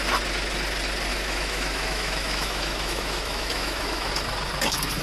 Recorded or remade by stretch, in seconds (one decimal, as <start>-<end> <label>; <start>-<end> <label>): 0.0-1.1 recorded; 1.1-4.1 remade; 4.1-5.0 recorded

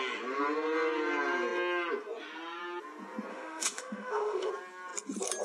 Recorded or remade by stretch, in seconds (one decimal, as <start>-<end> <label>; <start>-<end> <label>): 0.0-3.3 recorded; 3.3-4.5 remade; 4.5-5.4 recorded

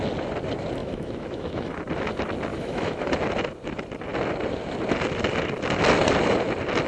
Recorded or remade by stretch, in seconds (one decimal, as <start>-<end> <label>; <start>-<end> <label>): 0.0-0.8 recorded; 0.8-1.8 remade; 1.8-2.5 recorded; 2.5-3.1 remade; 3.1-6.9 recorded

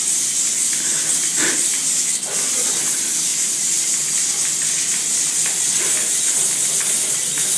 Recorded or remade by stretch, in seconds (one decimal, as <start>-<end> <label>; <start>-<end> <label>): 0.0-7.6 recorded

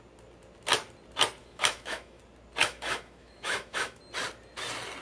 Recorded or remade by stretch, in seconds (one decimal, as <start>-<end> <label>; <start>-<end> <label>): 0.0-1.4 recorded; 1.4-2.2 remade; 2.2-2.6 recorded; 2.6-4.0 remade; 4.0-5.0 recorded